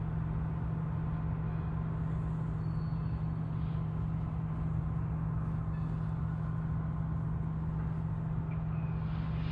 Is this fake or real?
real